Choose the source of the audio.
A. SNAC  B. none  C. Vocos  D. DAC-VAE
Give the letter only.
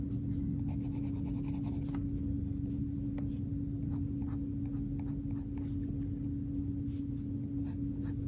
B